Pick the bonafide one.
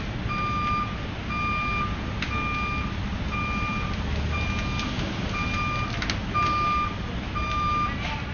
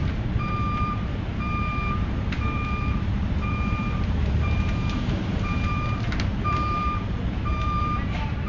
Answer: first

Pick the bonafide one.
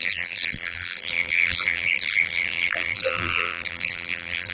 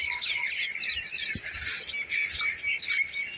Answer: second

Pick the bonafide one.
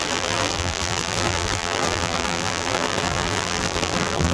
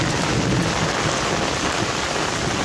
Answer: second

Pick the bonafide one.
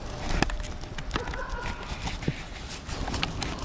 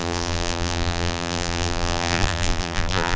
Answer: first